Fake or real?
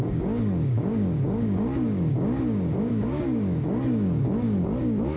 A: fake